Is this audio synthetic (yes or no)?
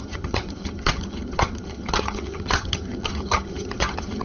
yes